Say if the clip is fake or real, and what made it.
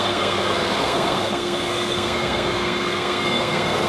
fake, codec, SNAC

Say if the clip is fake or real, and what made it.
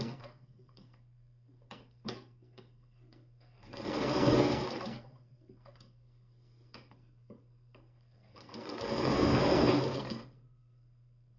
fake, codec, SNAC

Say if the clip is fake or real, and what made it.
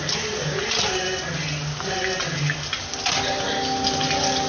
real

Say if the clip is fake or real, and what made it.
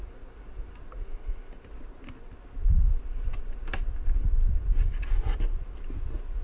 real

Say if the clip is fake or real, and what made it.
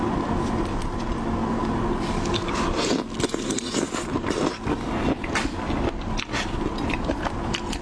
real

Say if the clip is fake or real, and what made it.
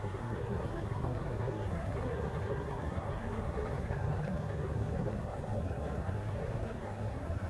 fake, codec, SNAC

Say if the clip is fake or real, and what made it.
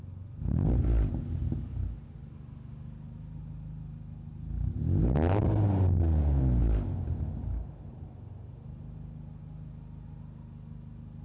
real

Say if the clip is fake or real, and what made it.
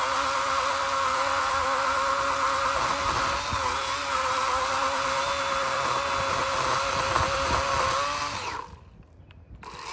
real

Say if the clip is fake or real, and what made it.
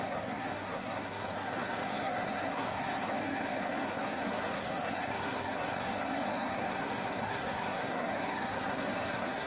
fake, codec, SNAC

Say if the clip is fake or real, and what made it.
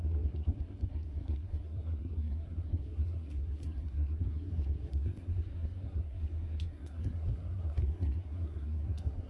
fake, codec, SNAC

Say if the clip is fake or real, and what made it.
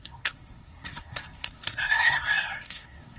fake, codec, SNAC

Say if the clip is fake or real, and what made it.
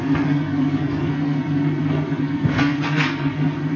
fake, codec, SNAC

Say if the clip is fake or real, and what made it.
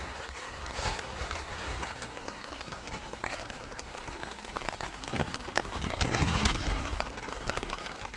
fake, codec, SNAC